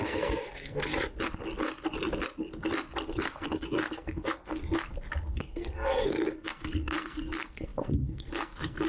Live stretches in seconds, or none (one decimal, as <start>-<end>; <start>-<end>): 0.9-3.1; 4.6-5.3